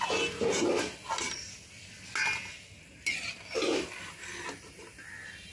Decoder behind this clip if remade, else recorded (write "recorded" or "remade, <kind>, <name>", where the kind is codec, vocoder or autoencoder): recorded